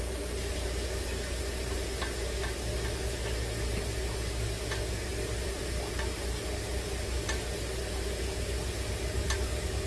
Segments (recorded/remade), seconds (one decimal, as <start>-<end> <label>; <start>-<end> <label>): 0.0-5.1 recorded; 5.1-5.6 remade; 5.6-9.9 recorded